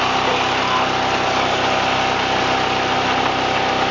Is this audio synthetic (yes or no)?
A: no